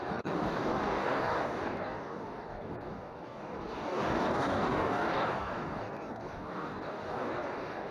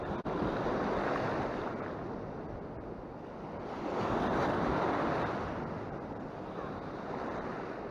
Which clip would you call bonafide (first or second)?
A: second